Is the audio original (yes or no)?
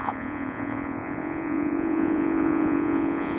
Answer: no